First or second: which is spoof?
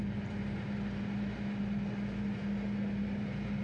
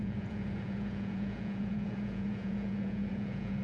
second